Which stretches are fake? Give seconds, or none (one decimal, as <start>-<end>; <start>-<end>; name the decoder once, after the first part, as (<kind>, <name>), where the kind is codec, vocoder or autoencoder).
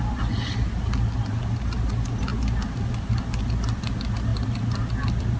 none